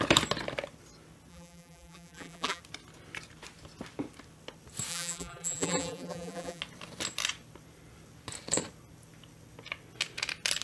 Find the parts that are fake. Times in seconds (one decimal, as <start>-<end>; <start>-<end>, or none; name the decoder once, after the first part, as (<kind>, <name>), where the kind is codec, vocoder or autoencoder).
1.3-2.6 (vocoder, BigVGAN v2); 4.9-6.6